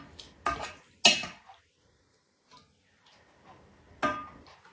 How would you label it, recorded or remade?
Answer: recorded